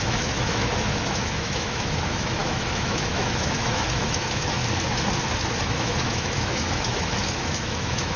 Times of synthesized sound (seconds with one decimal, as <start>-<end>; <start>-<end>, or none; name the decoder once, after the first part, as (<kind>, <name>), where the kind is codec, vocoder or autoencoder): 0.0-4.6 (autoencoder, DAC-VAE); 5.6-8.2